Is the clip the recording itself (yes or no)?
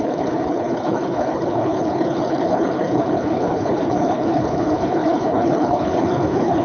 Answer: no